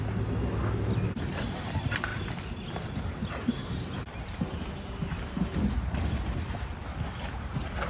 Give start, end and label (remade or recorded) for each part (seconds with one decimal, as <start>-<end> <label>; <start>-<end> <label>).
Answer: 0.0-3.4 recorded; 3.4-4.9 remade; 4.9-7.9 recorded